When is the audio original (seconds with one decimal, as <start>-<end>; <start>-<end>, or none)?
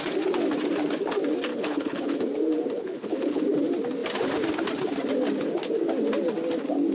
0.0-1.5; 2.2-2.8; 3.4-6.9